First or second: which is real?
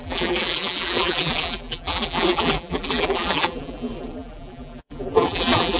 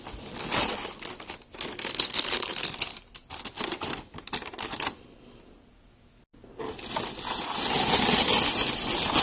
second